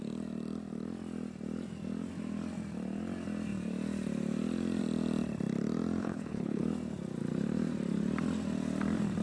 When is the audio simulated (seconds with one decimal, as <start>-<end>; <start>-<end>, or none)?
6.0-6.6